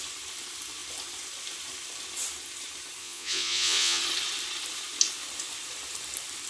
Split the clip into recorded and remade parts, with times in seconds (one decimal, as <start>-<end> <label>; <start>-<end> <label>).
0.0-3.0 recorded; 3.0-4.0 remade; 4.0-6.5 recorded